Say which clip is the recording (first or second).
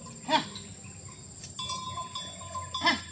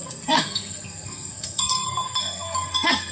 first